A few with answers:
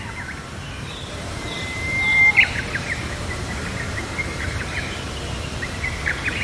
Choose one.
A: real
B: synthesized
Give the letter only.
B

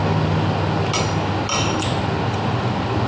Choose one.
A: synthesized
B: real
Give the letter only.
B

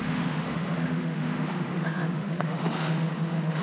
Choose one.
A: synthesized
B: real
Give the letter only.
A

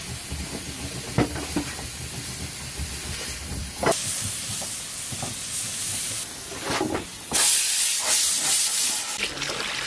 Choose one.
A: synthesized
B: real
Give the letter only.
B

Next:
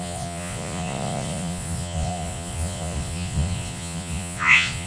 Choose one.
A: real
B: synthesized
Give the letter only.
B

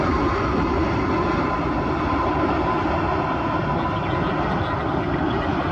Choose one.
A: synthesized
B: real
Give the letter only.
B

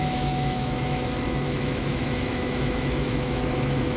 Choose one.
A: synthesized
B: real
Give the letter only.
A